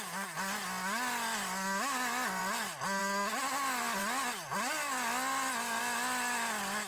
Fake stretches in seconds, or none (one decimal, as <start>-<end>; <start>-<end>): none